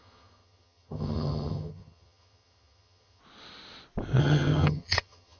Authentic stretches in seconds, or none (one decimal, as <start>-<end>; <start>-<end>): 3.2-4.2

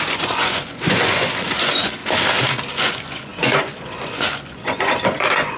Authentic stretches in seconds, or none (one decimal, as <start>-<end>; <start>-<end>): 2.0-2.7

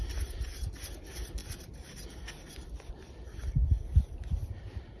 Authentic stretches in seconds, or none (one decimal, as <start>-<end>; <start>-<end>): 0.0-5.0